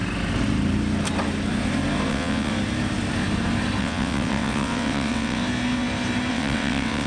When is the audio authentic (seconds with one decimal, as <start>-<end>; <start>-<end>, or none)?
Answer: 0.0-2.1; 2.5-3.8; 5.4-6.3